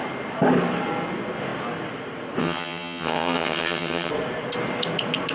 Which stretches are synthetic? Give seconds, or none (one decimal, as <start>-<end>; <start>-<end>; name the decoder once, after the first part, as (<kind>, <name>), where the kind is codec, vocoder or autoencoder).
2.4-4.1 (vocoder, HiFi-GAN)